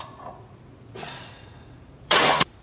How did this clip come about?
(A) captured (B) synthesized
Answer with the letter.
B